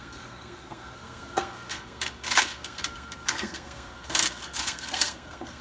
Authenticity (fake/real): fake